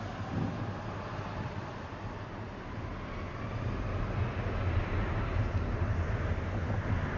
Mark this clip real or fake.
real